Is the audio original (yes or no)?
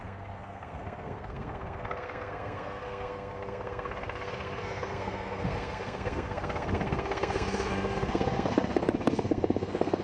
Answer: no